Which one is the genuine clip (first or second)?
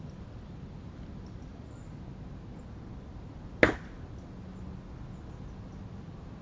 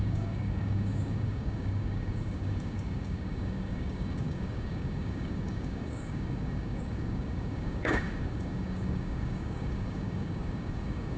first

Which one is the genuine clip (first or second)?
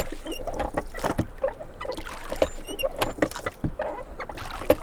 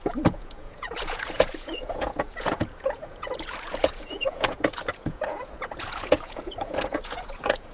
first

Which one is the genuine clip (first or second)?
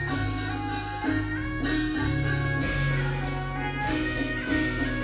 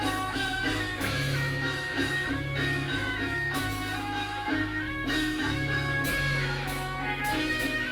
first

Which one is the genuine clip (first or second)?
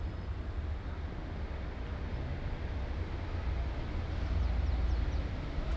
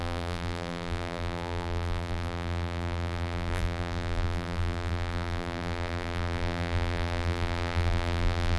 first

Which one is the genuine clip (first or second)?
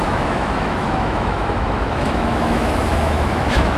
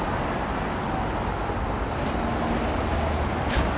second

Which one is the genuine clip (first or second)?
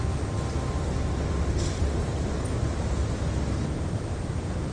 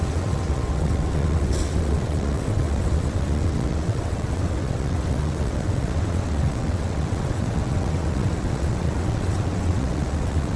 first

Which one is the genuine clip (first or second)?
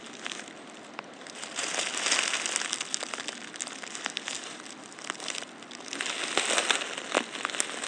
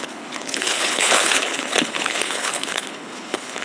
first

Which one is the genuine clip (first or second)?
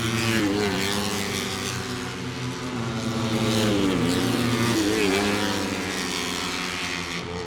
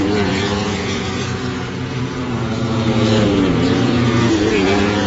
first